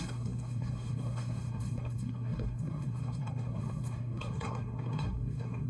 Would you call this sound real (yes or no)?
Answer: no